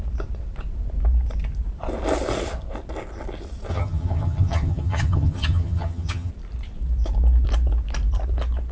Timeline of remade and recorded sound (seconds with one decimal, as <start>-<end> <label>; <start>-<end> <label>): 0.0-3.7 recorded; 3.7-6.3 remade; 6.3-8.7 recorded